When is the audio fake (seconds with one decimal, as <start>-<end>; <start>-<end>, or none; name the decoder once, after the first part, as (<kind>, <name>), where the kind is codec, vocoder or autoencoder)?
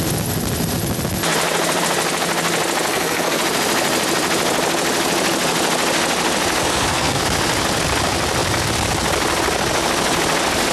2.9-3.4 (codec, SNAC); 6.6-7.2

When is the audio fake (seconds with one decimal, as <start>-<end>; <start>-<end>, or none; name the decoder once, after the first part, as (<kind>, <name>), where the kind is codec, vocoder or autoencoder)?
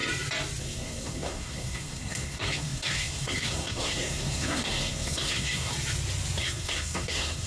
0.6-5.7 (codec, SNAC); 6.4-7.5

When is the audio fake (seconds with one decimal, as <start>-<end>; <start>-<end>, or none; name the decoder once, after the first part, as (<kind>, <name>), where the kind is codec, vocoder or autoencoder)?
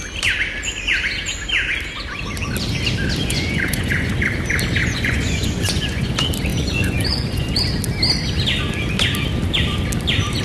3.2-4.1 (vocoder, Vocos); 4.8-6.1; 6.5-7.6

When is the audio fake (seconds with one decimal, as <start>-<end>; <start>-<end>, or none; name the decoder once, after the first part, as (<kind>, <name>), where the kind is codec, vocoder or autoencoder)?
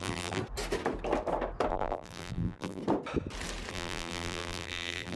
0.0-0.4 (vocoder, BigVGAN v2); 1.7-2.8; 3.7-5.2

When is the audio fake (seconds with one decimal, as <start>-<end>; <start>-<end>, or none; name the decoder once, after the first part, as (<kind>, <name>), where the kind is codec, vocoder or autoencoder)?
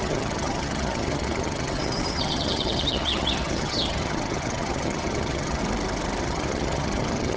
0.0-5.6 (vocoder, HiFi-GAN); 6.2-7.4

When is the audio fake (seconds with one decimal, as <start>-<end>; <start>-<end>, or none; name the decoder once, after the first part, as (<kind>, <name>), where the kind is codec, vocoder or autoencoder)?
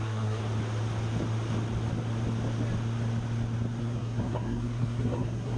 0.0-0.4 (codec, SNAC); 3.8-5.6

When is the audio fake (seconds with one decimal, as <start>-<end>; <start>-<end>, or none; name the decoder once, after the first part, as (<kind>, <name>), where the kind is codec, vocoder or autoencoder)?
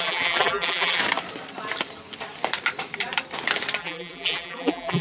0.0-1.0 (vocoder, BigVGAN v2); 3.8-5.0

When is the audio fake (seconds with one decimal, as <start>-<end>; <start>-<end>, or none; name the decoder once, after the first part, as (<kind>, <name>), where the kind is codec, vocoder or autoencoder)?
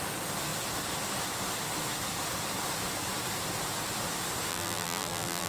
4.5-5.5 (vocoder, BigVGAN v2)